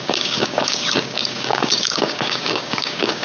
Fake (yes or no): yes